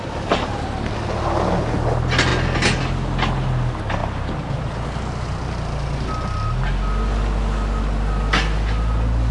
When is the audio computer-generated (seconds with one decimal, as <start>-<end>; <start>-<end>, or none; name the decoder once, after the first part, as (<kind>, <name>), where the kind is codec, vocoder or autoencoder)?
none